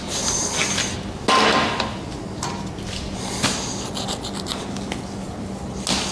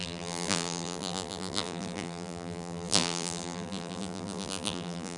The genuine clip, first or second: first